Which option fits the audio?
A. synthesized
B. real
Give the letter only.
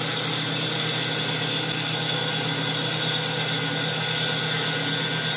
B